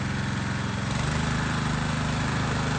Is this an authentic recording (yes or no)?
yes